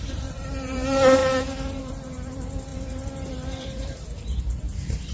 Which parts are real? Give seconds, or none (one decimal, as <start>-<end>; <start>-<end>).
none